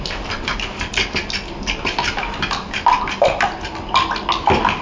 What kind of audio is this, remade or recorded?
recorded